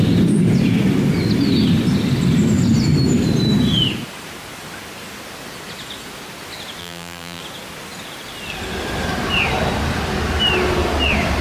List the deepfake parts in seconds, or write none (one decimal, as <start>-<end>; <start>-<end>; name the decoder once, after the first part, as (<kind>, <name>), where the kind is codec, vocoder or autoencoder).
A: 6.8-7.4 (vocoder, BigVGAN v2)